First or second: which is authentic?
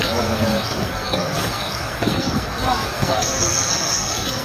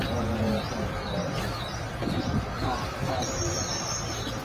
second